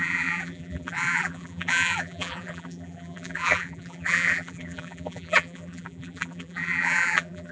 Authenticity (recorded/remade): remade